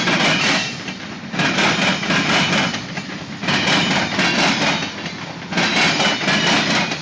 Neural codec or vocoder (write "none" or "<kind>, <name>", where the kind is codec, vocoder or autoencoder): none